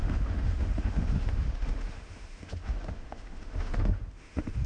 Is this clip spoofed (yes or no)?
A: yes